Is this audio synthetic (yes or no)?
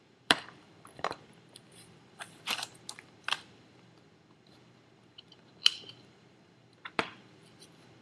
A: yes